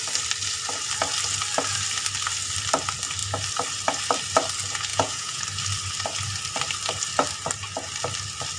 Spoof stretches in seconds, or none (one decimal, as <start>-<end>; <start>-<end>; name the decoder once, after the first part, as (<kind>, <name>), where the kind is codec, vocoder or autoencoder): 4.9-5.4 (vocoder, Vocos)